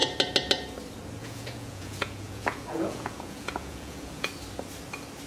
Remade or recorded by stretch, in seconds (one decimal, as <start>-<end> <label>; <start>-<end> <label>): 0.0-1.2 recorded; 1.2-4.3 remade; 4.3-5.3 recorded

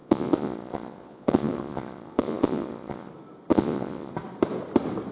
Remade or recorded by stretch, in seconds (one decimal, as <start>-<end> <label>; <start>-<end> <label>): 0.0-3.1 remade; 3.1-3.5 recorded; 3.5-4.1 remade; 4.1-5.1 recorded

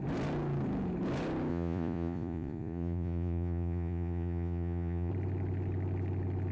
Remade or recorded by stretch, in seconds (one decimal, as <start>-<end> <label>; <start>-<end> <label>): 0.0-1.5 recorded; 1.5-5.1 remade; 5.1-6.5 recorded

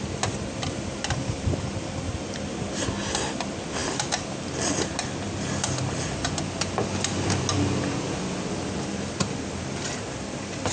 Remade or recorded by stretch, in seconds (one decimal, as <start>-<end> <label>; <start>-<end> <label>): 0.0-10.7 recorded

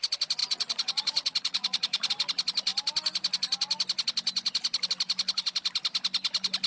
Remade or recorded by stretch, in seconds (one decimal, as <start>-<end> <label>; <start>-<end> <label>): 0.0-0.4 recorded; 0.4-2.1 remade; 2.1-6.7 recorded

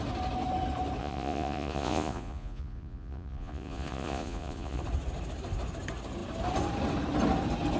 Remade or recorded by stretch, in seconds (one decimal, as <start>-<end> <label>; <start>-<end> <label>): 0.0-1.0 recorded; 1.0-4.8 remade; 4.8-7.8 recorded

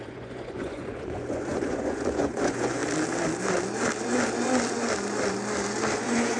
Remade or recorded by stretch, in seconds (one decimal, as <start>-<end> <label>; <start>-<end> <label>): 0.0-2.8 remade; 2.8-6.0 recorded; 6.0-6.4 remade

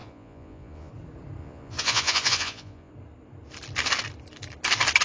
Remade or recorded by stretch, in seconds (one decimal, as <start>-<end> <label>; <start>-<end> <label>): 0.0-0.9 remade; 0.9-1.4 recorded; 1.4-2.9 remade; 2.9-5.0 recorded